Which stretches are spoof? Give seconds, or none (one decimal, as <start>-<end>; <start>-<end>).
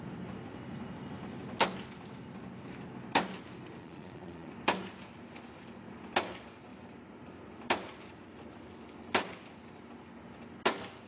3.8-4.5